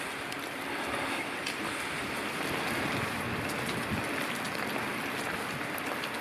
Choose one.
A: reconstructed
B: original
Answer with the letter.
B